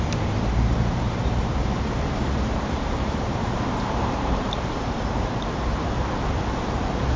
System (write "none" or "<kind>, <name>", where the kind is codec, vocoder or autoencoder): vocoder, BigVGAN v2